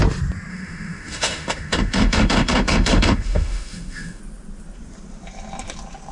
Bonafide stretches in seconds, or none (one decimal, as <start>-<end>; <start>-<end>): 0.0-0.5; 4.2-6.1